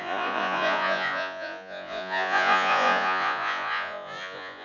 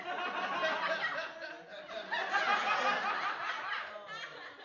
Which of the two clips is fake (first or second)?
first